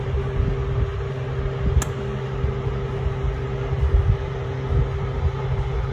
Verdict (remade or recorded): recorded